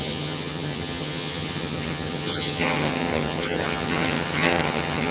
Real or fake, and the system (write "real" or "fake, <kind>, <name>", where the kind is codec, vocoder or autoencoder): fake, vocoder, HiFi-GAN